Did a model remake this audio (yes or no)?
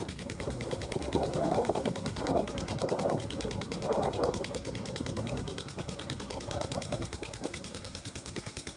yes